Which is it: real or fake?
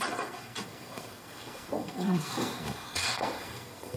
fake